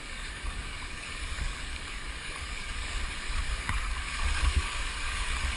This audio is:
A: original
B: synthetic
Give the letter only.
B